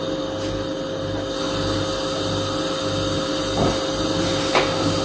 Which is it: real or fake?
real